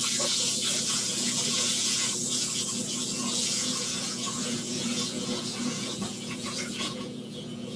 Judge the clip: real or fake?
fake